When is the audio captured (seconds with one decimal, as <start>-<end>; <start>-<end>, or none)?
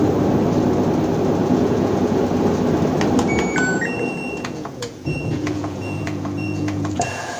0.0-1.4; 2.2-3.7